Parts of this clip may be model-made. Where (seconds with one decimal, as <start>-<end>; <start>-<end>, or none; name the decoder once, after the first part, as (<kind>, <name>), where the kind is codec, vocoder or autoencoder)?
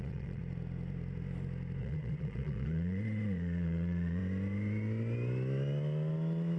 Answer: 0.0-0.4 (vocoder, Vocos); 1.8-4.2